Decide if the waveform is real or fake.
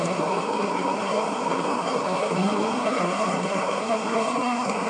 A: fake